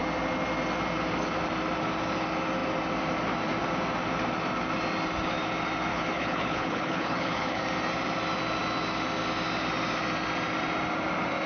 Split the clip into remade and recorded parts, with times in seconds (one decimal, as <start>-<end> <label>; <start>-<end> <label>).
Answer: 0.0-5.9 recorded; 5.9-7.6 remade; 7.6-11.5 recorded